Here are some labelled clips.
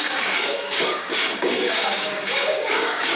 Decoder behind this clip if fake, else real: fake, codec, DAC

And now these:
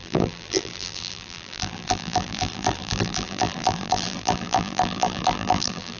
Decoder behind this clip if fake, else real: fake, vocoder, BigVGAN v2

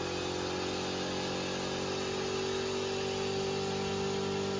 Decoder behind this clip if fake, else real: real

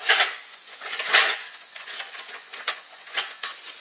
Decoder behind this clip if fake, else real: fake, vocoder, Vocos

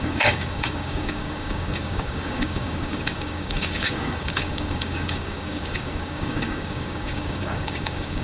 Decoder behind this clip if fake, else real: fake, codec, DAC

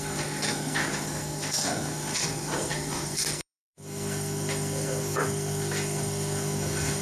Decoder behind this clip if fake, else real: fake, codec, SNAC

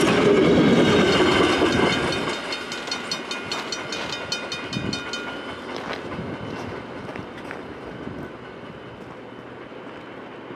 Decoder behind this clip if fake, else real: real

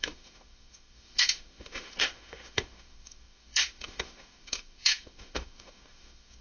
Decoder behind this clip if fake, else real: fake, autoencoder, DAC-VAE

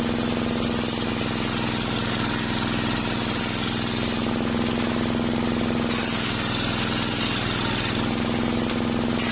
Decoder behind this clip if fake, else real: real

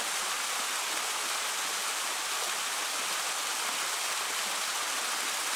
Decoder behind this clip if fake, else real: real